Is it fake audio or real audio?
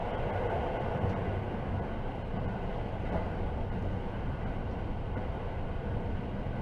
real